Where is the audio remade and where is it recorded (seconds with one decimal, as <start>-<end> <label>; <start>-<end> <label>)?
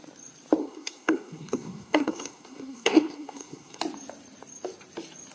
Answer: 0.0-0.6 recorded; 0.6-3.8 remade; 3.8-5.3 recorded